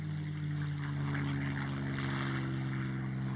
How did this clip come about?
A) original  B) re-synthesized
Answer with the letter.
A